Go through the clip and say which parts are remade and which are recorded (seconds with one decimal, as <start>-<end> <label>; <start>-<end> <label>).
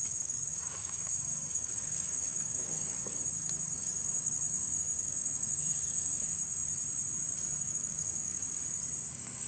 0.0-6.6 remade; 6.6-7.6 recorded; 7.6-8.6 remade; 8.6-9.1 recorded; 9.1-9.5 remade